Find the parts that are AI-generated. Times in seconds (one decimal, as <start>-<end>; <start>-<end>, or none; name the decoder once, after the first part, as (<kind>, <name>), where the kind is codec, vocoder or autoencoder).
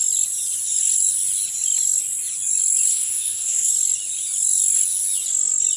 2.9-3.7 (codec, SNAC)